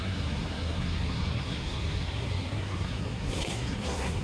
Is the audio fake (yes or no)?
yes